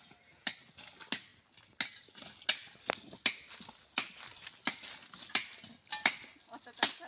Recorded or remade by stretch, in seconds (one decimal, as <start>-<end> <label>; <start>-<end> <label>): 0.0-7.1 recorded